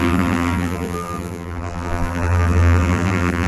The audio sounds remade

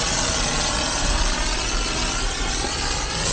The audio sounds recorded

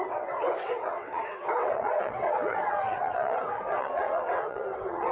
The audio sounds remade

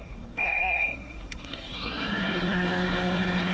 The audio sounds remade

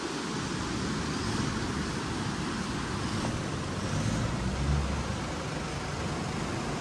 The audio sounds recorded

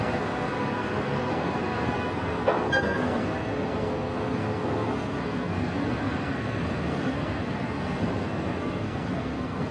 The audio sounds remade